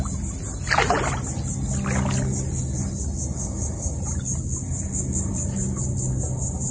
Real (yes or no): yes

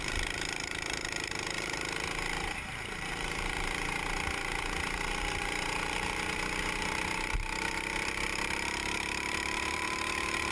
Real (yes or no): no